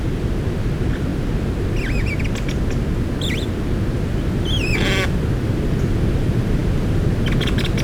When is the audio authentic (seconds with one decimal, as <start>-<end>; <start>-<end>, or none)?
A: 0.0-7.8